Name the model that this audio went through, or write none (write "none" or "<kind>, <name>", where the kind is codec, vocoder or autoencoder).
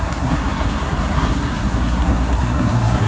codec, SNAC